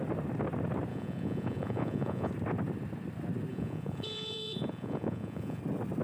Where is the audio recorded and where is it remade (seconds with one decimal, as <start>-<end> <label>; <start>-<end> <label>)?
0.0-0.9 recorded; 0.9-2.3 remade; 2.3-3.5 recorded; 3.5-5.6 remade; 5.6-6.0 recorded